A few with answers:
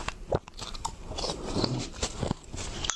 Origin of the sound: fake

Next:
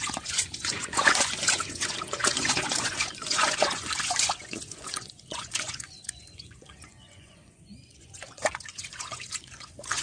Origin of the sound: fake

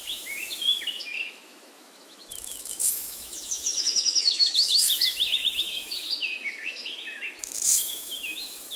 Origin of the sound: fake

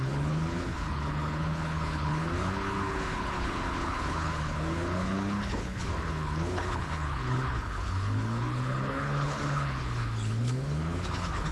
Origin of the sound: fake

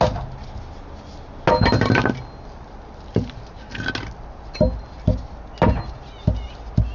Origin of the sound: real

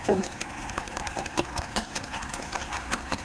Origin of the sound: fake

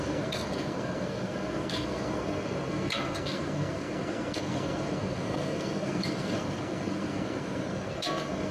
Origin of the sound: fake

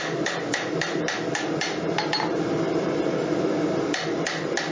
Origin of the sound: real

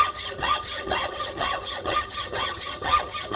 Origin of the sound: fake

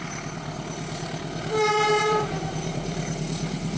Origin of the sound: fake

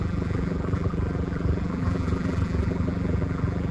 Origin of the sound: fake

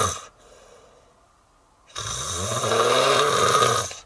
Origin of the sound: real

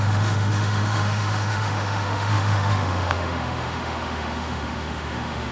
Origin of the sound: fake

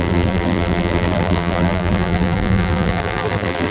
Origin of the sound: fake